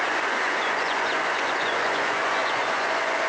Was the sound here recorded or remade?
remade